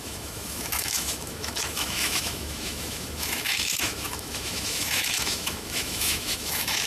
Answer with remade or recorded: remade